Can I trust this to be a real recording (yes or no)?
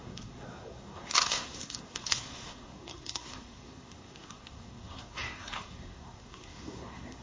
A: no